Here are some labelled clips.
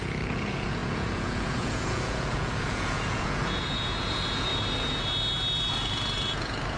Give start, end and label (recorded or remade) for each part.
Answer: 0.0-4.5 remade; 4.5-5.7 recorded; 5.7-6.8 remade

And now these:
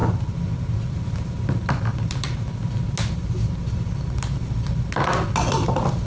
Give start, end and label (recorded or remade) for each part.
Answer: 0.0-6.1 recorded

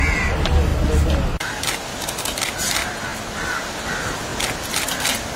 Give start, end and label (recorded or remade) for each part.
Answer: 0.0-5.4 recorded